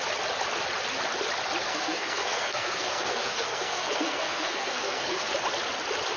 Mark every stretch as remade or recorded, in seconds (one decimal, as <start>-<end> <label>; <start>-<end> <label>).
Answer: 0.0-1.6 recorded; 1.6-5.3 remade; 5.3-6.2 recorded